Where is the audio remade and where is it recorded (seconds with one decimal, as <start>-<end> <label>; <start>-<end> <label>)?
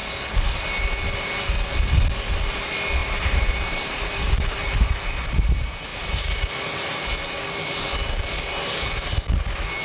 0.0-3.0 recorded; 3.0-4.9 remade; 4.9-5.9 recorded; 5.9-6.5 remade; 6.5-9.8 recorded